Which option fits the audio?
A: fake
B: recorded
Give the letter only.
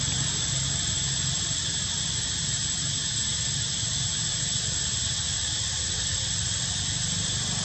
B